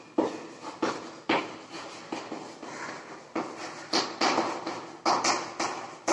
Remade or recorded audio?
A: recorded